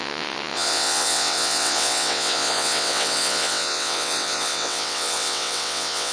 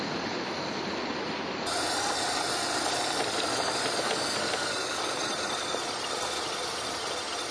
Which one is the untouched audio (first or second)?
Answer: second